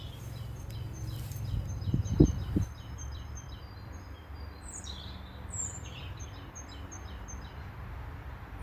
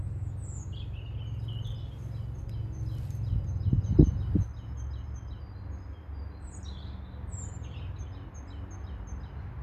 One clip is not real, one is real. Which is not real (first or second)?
first